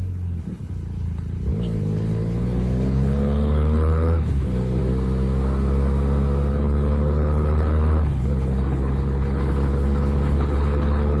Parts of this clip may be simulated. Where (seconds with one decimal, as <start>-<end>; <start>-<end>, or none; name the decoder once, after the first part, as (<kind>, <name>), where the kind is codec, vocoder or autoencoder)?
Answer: 0.0-4.8 (codec, HILCodec); 6.5-11.2